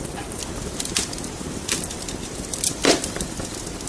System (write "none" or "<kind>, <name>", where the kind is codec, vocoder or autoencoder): none